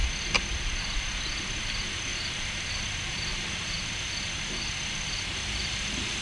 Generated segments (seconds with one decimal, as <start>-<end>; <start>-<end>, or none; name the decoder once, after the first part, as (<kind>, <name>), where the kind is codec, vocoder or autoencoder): 2.1-2.8 (vocoder, BigVGAN v2); 3.3-3.9